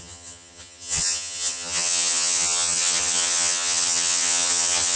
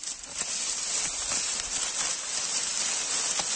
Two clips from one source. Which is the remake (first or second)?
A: first